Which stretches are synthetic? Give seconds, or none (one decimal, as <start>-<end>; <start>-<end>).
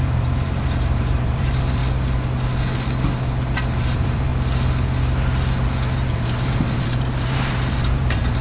0.0-1.8; 3.8-4.3; 6.1-8.4